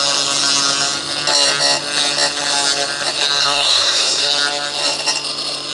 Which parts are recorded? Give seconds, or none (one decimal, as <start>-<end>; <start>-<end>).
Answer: 0.0-3.4; 4.3-5.7